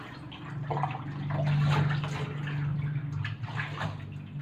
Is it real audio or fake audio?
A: real